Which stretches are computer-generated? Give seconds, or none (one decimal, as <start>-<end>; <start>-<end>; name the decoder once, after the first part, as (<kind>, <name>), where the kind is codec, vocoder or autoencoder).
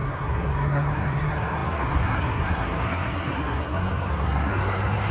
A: 0.0-5.1 (codec, SNAC)